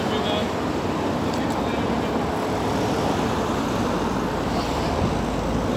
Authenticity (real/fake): real